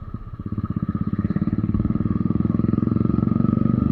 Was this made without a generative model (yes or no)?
no